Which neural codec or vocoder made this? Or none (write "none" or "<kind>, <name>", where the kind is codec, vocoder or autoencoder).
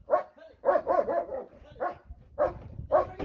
none